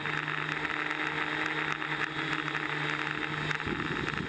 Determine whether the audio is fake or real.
real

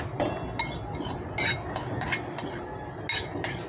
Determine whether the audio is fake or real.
real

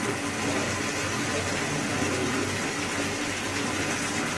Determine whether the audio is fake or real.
real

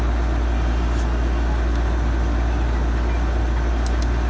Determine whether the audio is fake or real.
real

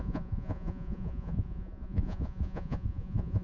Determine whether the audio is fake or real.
fake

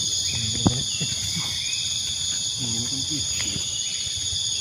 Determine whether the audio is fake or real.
real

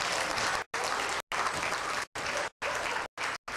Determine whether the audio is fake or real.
real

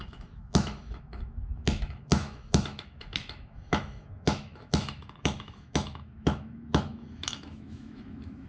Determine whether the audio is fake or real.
fake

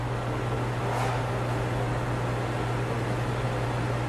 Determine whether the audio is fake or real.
real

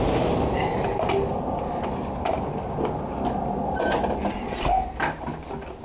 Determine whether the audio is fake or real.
real